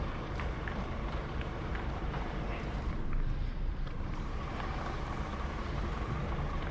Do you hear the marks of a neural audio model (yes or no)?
yes